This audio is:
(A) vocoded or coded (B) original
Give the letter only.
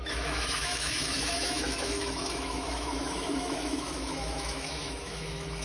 A